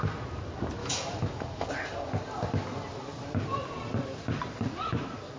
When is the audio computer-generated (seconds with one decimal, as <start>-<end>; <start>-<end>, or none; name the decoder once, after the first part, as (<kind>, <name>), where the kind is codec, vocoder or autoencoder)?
0.8-1.7 (autoencoder, DAC-VAE)